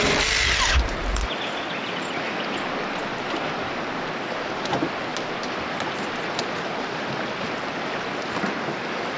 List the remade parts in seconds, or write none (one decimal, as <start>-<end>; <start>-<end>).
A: none